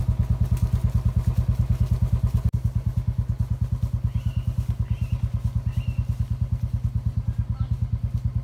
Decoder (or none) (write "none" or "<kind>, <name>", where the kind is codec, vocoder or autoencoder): none